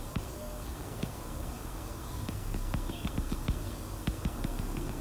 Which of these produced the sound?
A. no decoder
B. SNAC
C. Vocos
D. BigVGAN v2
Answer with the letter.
B